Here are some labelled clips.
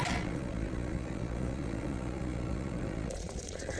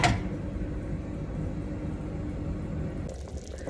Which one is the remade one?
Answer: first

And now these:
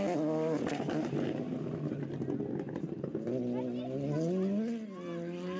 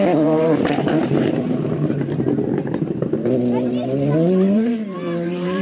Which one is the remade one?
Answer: second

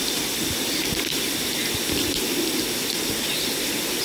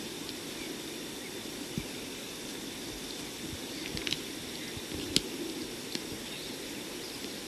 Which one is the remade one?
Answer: second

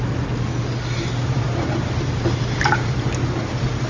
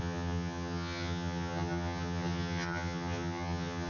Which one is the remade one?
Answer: second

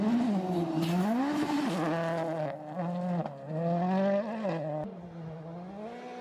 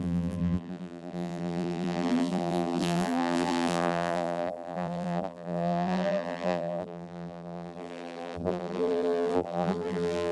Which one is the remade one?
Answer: second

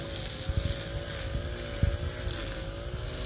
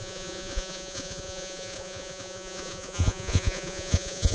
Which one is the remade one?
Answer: second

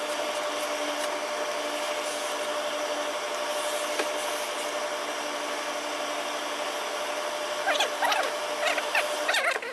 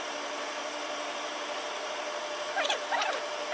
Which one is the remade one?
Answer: second